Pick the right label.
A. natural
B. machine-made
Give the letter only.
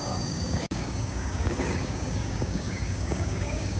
B